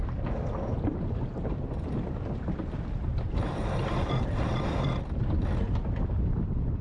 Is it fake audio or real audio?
real